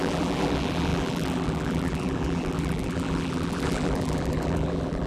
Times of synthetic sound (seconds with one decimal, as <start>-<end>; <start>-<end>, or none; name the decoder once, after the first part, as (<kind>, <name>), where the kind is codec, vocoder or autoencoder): 0.0-5.1 (vocoder, BigVGAN v2)